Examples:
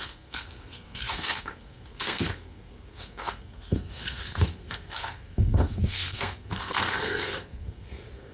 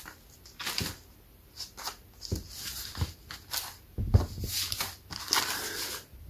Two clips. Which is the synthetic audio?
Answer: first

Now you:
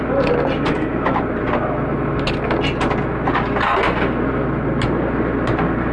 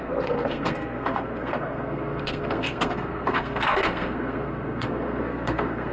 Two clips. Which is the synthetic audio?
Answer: second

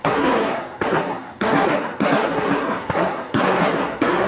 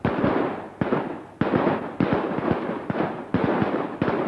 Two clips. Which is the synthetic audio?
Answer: first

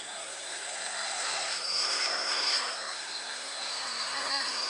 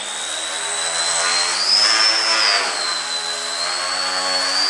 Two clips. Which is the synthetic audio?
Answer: first